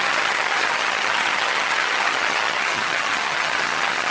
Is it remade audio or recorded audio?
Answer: remade